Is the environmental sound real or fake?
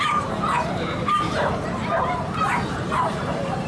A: fake